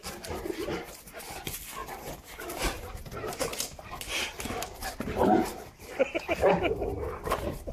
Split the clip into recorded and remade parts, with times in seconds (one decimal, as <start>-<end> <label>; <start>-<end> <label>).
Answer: 0.0-7.7 recorded